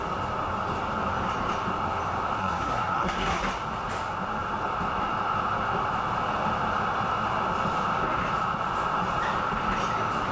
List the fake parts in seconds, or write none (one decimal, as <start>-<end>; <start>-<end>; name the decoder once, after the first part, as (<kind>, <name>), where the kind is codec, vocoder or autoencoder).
2.4-3.4 (codec, SNAC)